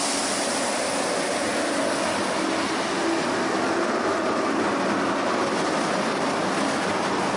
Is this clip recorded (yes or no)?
yes